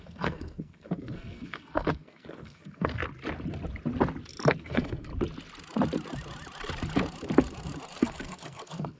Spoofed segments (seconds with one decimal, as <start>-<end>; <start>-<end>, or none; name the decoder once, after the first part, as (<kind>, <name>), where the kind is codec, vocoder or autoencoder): 0.0-3.0 (codec, SNAC); 4.6-5.1; 8.0-9.0